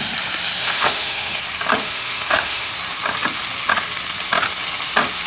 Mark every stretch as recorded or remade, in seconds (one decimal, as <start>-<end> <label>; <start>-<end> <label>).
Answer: 0.0-0.6 recorded; 0.6-1.4 remade; 1.4-1.8 recorded; 1.8-2.7 remade; 2.7-5.3 recorded